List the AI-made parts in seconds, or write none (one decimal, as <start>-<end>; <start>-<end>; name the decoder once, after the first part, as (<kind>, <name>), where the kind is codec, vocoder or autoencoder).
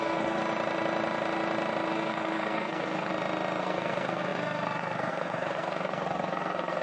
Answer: 0.0-0.4 (codec, SNAC); 1.9-3.1; 3.6-6.8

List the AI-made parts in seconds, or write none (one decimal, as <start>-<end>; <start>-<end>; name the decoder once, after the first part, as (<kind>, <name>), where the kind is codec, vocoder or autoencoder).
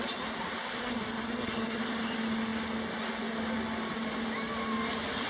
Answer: 0.8-1.8 (codec, SNAC)